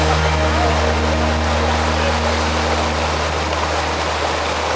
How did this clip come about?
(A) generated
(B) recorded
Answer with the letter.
B